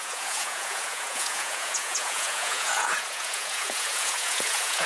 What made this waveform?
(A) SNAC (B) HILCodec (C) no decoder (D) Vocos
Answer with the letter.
D